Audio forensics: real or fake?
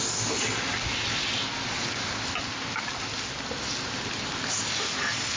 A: real